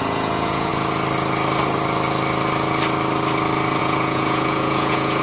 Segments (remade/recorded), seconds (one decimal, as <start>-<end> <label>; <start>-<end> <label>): 0.0-0.7 remade; 0.7-3.8 recorded; 3.8-5.2 remade